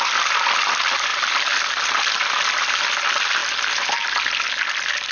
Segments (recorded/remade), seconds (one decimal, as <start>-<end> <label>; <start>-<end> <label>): 0.0-5.1 recorded